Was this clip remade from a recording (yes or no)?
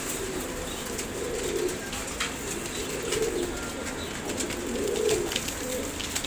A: no